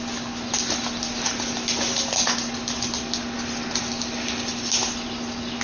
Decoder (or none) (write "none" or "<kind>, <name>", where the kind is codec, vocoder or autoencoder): none